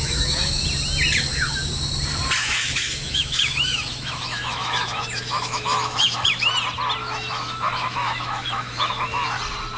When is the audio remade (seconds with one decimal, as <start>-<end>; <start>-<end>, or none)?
0.0-0.6; 2.4-6.5; 7.0-9.4